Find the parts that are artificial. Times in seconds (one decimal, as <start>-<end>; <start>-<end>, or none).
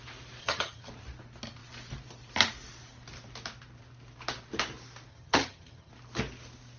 0.4-0.9; 5.1-5.9